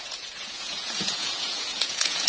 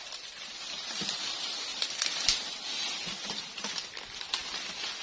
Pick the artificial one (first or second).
first